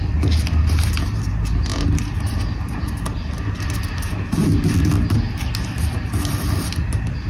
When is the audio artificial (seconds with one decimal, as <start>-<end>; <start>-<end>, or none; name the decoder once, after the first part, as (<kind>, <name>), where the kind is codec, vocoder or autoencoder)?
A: none